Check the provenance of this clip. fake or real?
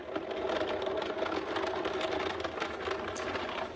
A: real